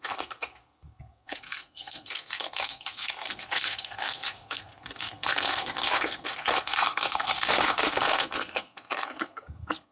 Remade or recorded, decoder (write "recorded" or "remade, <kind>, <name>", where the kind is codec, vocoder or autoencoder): remade, codec, SNAC